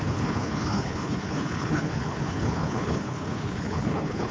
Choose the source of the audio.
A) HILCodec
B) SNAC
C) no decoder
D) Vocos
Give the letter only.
A